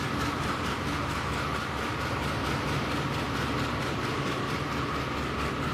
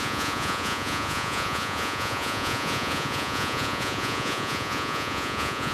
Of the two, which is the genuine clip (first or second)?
first